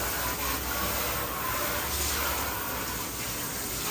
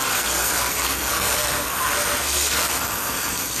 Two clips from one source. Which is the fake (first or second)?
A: second